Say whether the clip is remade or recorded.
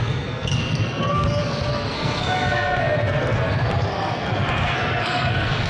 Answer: remade